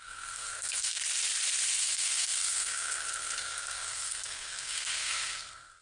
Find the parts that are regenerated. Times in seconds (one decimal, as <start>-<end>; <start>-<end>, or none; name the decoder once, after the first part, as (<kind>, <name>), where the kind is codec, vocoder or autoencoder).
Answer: 0.0-1.0 (codec, SNAC); 1.8-5.8